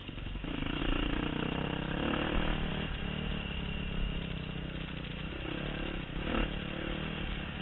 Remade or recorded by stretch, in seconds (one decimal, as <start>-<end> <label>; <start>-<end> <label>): 0.0-0.8 remade; 0.8-7.6 recorded